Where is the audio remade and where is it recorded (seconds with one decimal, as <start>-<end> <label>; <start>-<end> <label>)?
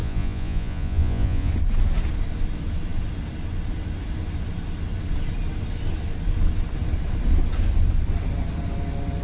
0.0-1.5 remade; 1.5-9.2 recorded